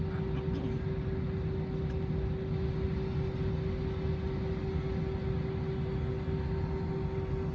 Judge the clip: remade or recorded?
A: recorded